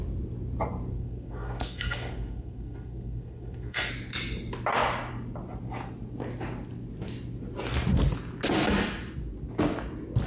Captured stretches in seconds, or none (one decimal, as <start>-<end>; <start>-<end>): 0.0-0.9; 3.9-10.3